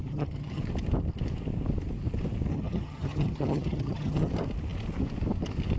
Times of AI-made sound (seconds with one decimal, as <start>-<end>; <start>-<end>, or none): 0.0-0.6; 2.5-4.3